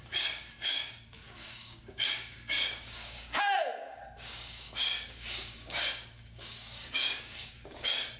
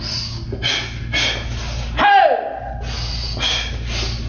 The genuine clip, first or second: second